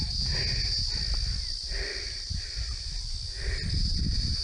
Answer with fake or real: real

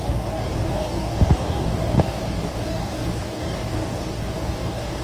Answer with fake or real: fake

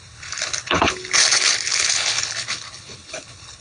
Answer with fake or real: fake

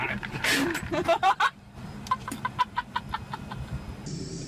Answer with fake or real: real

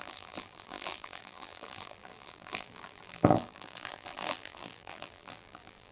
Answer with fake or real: fake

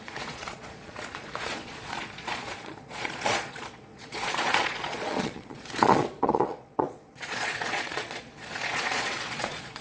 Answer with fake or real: fake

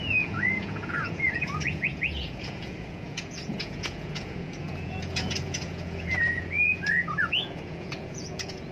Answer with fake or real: fake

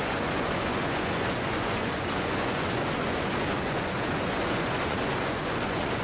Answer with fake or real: fake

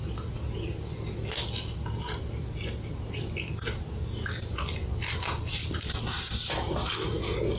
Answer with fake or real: real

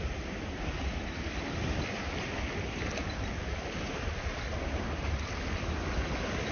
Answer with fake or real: real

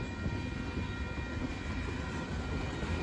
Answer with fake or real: real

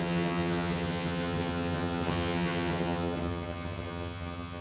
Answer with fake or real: fake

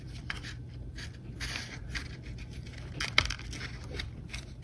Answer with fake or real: fake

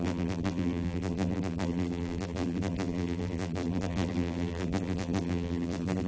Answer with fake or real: fake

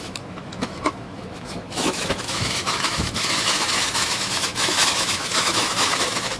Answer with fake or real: fake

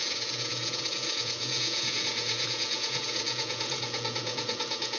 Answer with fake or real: fake